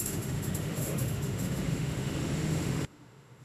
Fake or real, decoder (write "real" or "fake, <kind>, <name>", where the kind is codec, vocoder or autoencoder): fake, autoencoder, DAC-VAE